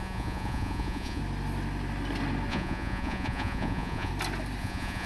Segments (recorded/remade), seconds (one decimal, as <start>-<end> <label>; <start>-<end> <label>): 0.0-1.2 remade; 1.2-2.5 recorded; 2.5-4.1 remade; 4.1-4.6 recorded; 4.6-5.1 remade